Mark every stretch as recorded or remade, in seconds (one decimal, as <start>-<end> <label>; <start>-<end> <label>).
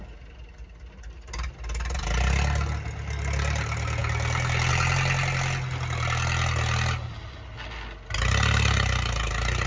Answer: 0.0-9.7 recorded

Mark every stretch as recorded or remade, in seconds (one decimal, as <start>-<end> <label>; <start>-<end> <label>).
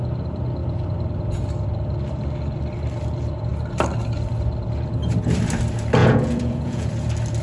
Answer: 0.0-6.0 recorded; 6.0-6.9 remade; 6.9-7.4 recorded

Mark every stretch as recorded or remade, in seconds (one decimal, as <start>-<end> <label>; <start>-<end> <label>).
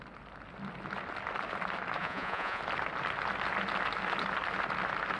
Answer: 0.0-2.0 recorded; 2.0-2.6 remade; 2.6-5.2 recorded